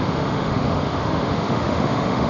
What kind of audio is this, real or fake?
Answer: fake